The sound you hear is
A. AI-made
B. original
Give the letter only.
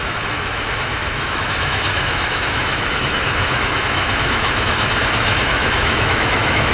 A